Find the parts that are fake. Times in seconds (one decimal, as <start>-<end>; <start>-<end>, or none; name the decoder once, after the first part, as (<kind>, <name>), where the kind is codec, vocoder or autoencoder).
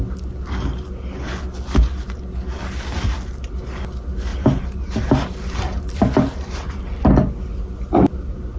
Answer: 4.3-6.8 (vocoder, BigVGAN v2)